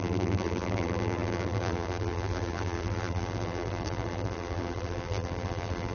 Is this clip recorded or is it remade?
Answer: remade